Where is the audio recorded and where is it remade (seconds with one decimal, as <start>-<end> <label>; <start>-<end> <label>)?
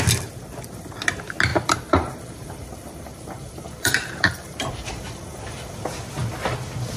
0.0-1.5 recorded; 1.5-5.7 remade; 5.7-7.0 recorded